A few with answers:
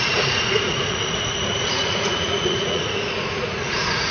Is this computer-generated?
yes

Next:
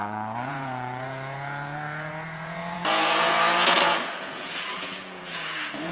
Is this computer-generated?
yes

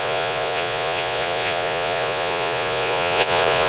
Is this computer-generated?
yes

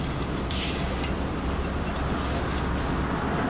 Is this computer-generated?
no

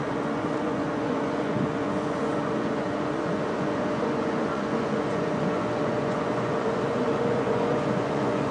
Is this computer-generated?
yes